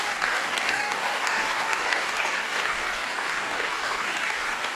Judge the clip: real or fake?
fake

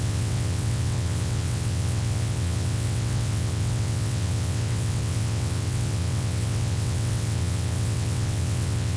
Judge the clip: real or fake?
fake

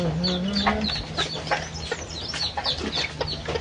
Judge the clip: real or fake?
real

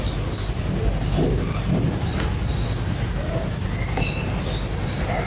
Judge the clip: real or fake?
real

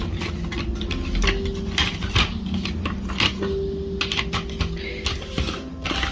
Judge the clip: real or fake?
real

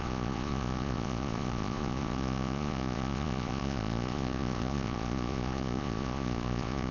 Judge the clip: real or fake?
fake